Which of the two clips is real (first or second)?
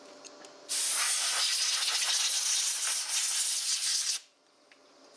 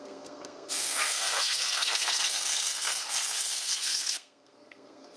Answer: first